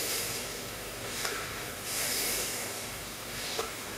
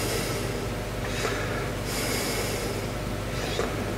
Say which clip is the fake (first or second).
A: first